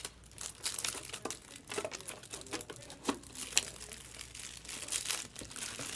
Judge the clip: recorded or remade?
recorded